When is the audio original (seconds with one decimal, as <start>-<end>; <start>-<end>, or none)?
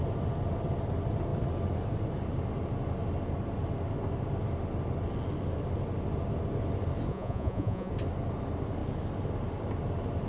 0.0-7.1; 7.9-10.3